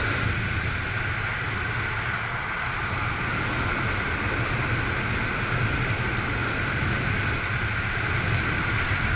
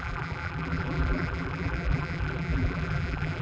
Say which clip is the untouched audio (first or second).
first